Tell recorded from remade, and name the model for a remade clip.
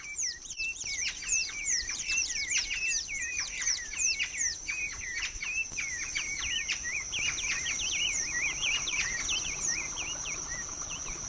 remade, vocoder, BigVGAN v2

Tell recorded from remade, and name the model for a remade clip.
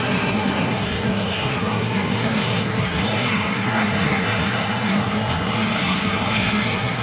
remade, codec, SNAC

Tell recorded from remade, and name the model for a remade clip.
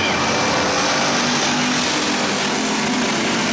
recorded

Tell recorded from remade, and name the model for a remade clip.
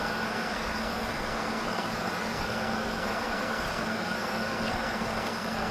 remade, codec, SNAC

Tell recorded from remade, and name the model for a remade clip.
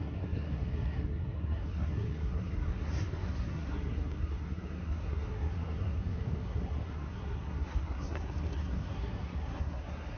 remade, codec, SNAC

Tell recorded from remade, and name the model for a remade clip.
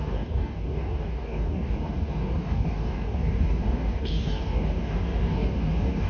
remade, codec, DAC